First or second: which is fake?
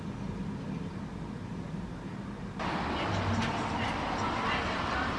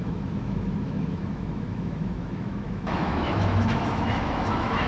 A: second